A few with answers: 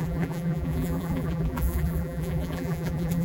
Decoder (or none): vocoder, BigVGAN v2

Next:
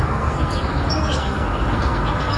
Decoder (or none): codec, SNAC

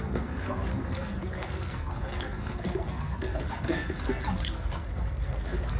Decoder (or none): codec, SNAC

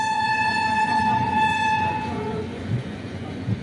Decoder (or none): vocoder, Vocos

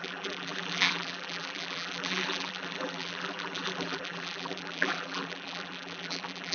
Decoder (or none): vocoder, BigVGAN v2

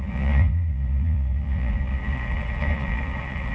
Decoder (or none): vocoder, Vocos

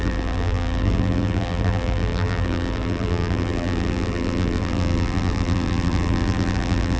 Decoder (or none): vocoder, BigVGAN v2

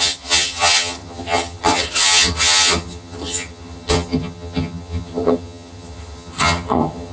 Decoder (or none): vocoder, HiFi-GAN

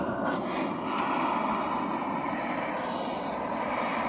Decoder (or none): none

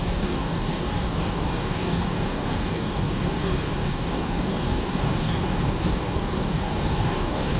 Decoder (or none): codec, DAC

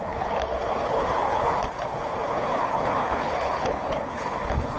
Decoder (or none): codec, HILCodec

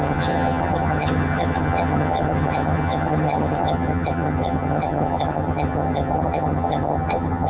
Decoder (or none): vocoder, HiFi-GAN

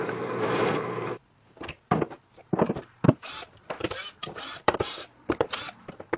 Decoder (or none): vocoder, BigVGAN v2